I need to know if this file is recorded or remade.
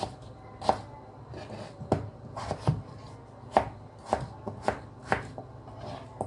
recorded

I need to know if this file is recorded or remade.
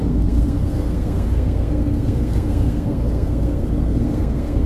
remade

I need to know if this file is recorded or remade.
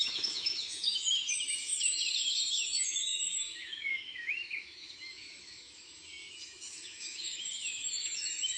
remade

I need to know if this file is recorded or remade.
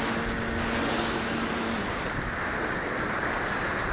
recorded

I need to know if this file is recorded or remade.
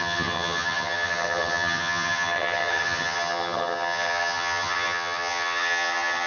remade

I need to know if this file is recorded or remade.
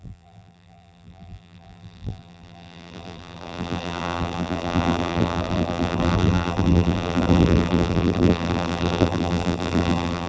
remade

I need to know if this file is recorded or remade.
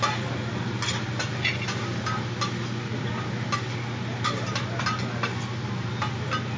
recorded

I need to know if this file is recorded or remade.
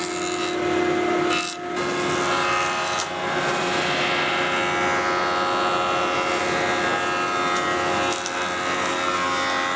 recorded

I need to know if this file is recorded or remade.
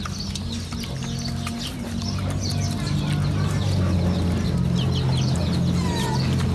recorded